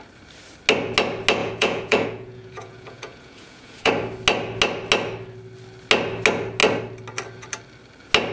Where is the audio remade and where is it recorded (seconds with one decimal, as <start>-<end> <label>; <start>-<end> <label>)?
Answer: 0.0-1.4 recorded; 1.4-3.9 remade; 3.9-8.3 recorded